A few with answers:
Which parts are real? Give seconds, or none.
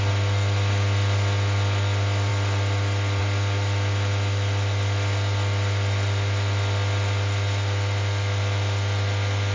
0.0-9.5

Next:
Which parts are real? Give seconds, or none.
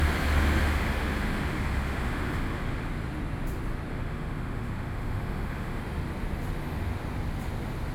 0.0-0.6; 2.9-3.9; 5.8-7.9